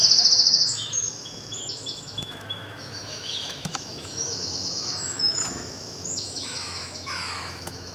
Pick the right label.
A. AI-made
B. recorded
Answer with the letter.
A